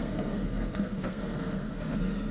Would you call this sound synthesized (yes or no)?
yes